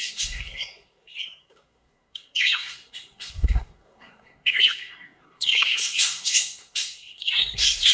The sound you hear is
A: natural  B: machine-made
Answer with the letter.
B